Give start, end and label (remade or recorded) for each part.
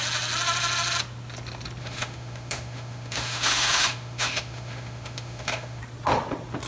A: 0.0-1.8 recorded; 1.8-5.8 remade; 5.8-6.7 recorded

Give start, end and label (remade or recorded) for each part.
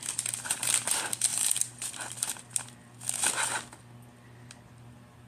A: 0.0-5.3 recorded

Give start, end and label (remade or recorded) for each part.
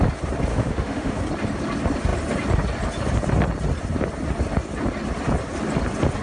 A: 0.0-0.5 recorded; 0.5-1.2 remade; 1.2-6.2 recorded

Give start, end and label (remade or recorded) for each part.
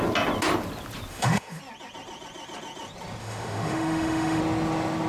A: 0.0-1.1 recorded; 1.1-1.6 remade; 1.6-3.2 recorded; 3.2-4.4 remade; 4.4-5.1 recorded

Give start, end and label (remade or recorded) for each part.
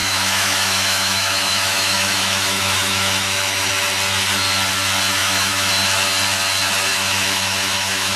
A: 0.0-3.7 remade; 3.7-5.2 recorded; 5.2-5.7 remade; 5.7-6.9 recorded; 6.9-8.2 remade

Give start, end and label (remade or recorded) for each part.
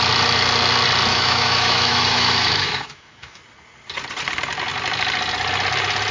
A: 0.0-1.1 recorded; 1.1-3.4 remade; 3.4-6.1 recorded